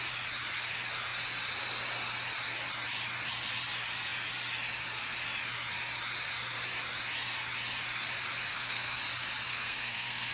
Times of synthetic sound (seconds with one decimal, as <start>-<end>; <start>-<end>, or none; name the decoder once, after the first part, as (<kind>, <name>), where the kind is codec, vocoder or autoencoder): 8.5-9.0 (codec, SNAC); 9.5-10.3